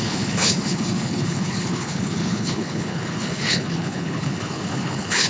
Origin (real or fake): fake